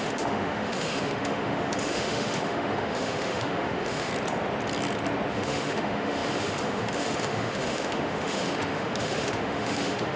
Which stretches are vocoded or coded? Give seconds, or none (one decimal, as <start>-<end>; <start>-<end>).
0.0-4.1; 5.3-10.2